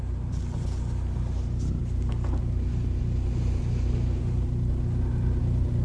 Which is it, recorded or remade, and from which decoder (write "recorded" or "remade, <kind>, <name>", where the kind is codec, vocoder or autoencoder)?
recorded